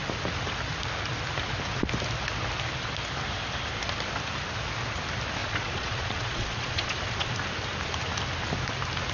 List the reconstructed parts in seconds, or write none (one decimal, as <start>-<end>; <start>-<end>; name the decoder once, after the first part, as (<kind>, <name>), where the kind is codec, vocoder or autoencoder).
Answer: 5.4-7.3 (vocoder, Vocos)